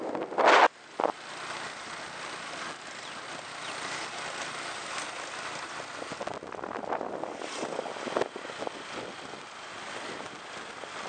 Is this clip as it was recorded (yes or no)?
yes